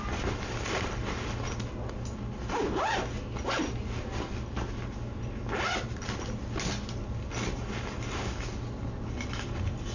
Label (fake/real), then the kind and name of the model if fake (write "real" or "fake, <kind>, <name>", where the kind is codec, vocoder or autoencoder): real